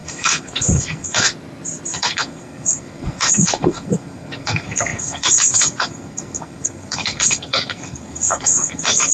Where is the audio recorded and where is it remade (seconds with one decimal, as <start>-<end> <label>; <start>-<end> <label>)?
0.0-1.3 remade; 1.3-1.9 recorded; 1.9-9.1 remade

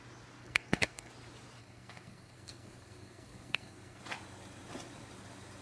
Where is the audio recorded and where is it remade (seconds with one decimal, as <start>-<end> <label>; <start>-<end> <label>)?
0.0-0.4 recorded; 0.4-1.1 remade; 1.1-1.6 recorded; 1.6-4.0 remade; 4.0-5.6 recorded

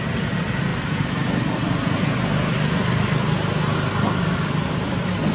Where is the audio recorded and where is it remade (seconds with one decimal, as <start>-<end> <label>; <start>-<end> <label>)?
0.0-5.3 recorded

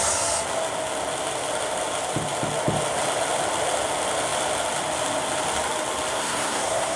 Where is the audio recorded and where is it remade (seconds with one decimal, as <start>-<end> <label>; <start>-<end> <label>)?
0.0-6.1 recorded; 6.1-7.0 remade

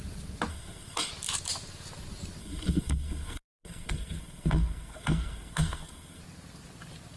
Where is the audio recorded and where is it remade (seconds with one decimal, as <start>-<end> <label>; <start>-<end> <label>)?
0.0-0.5 recorded; 0.5-1.1 remade; 1.1-2.4 recorded; 2.4-6.2 remade; 6.2-7.2 recorded